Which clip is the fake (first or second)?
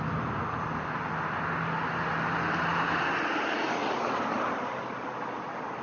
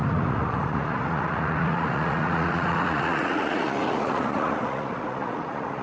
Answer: second